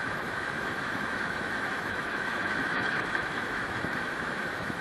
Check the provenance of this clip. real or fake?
fake